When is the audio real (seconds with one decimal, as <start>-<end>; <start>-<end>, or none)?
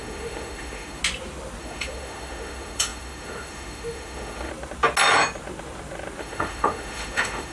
1.0-1.6; 4.5-6.2